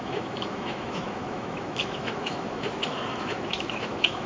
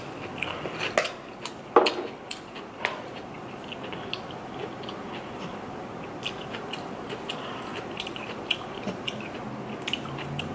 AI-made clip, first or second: first